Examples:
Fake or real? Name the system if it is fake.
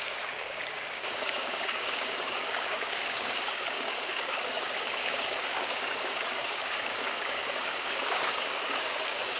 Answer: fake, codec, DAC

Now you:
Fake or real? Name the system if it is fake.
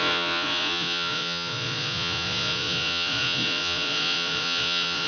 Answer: fake, vocoder, Vocos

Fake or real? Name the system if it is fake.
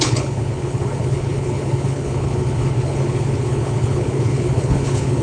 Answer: fake, codec, HILCodec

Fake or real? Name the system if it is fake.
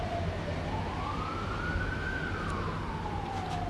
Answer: real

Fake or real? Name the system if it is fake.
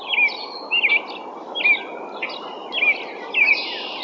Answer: real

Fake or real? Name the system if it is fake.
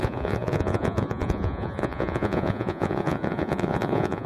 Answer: fake, vocoder, Vocos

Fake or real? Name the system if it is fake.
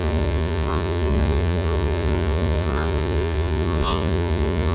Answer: fake, vocoder, Vocos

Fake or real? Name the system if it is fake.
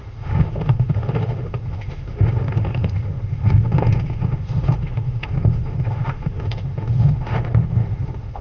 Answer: fake, autoencoder, DAC-VAE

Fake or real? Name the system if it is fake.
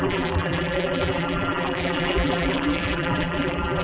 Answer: fake, vocoder, BigVGAN v2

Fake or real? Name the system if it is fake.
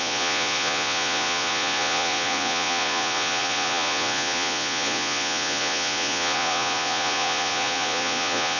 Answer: fake, vocoder, Vocos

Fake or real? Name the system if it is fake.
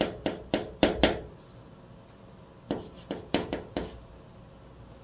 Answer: real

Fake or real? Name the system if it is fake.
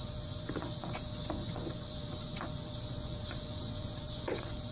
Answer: fake, vocoder, Vocos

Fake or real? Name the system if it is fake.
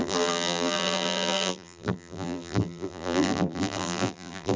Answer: fake, vocoder, BigVGAN v2